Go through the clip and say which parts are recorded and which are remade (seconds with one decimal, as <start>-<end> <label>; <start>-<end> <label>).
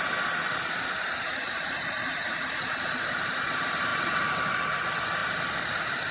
0.0-1.0 recorded; 1.0-3.5 remade; 3.5-3.9 recorded; 3.9-4.5 remade; 4.5-5.2 recorded; 5.2-6.1 remade